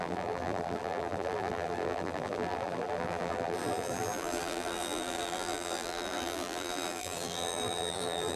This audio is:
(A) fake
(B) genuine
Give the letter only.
A